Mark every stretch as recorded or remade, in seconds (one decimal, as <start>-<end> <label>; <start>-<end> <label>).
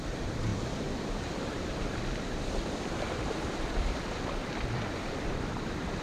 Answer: 0.0-0.5 remade; 0.5-1.2 recorded; 1.2-6.0 remade